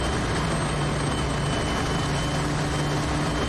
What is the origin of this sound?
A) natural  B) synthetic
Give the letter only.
A